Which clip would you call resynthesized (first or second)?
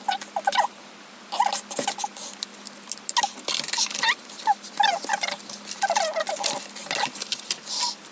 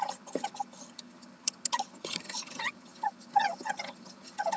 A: second